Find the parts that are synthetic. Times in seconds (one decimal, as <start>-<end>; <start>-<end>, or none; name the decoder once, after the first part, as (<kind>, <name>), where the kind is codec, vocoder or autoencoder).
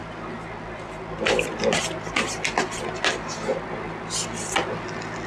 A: 3.5-4.1 (vocoder, BigVGAN v2)